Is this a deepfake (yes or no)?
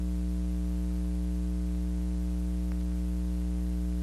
no